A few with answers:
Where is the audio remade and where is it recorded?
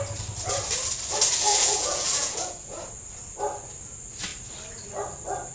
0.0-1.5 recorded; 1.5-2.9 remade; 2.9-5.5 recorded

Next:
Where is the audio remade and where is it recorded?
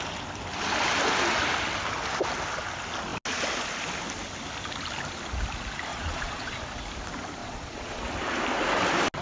0.0-5.9 recorded; 5.9-6.8 remade; 6.8-7.4 recorded; 7.4-8.0 remade; 8.0-9.2 recorded